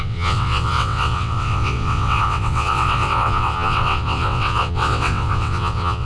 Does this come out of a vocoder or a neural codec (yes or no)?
yes